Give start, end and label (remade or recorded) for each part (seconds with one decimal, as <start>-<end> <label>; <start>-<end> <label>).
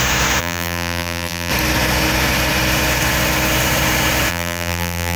0.0-0.4 recorded; 0.4-1.5 remade; 1.5-4.3 recorded; 4.3-5.2 remade